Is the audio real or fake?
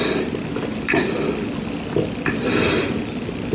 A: real